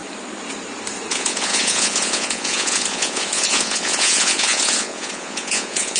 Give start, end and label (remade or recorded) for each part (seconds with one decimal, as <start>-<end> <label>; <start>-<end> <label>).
0.0-1.1 recorded; 1.1-6.0 remade